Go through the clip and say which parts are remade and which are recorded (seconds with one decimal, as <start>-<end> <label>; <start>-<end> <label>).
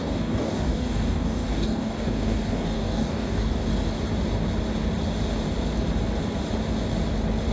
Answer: 0.0-3.7 remade; 3.7-7.5 recorded